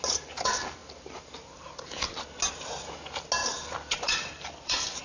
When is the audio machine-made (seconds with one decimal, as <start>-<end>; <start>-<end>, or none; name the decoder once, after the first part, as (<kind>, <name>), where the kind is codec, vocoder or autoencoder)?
3.4-5.0 (vocoder, BigVGAN v2)